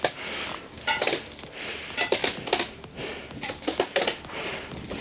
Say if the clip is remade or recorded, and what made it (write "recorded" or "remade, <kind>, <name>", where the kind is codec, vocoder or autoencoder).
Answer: recorded